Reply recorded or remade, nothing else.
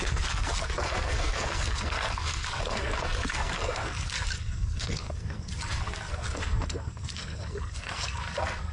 remade